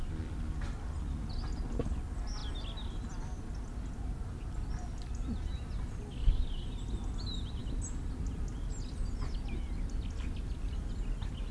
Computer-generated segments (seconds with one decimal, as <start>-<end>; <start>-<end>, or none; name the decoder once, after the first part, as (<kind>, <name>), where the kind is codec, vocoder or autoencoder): none